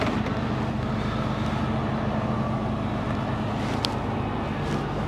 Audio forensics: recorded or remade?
recorded